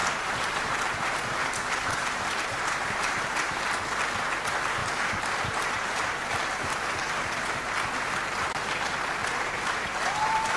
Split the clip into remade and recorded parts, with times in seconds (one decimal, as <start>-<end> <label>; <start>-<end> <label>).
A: 0.0-3.6 remade; 3.6-4.8 recorded; 4.8-7.7 remade; 7.7-9.2 recorded; 9.2-10.6 remade